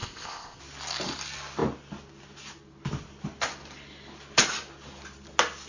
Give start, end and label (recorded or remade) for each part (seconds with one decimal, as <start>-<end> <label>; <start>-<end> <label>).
0.0-0.6 remade; 0.6-5.7 recorded